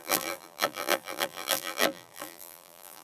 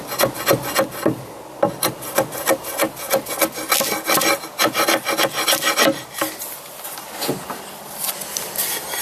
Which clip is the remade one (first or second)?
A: first